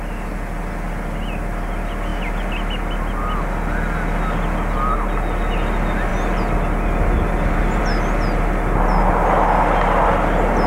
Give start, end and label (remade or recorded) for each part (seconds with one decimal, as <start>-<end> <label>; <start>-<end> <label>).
0.0-10.7 recorded